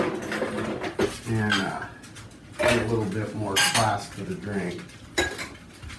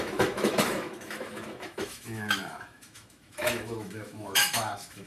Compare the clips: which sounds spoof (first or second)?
second